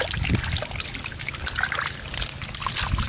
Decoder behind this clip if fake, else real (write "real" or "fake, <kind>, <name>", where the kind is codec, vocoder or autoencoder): real